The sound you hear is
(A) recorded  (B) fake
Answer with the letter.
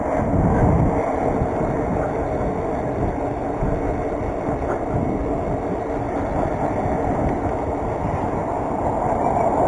A